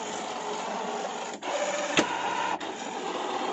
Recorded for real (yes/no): yes